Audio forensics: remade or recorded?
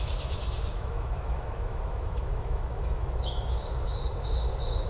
remade